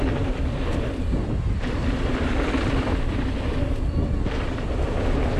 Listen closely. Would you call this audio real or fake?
fake